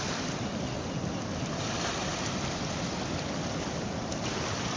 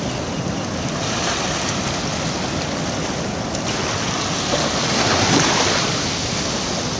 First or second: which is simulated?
first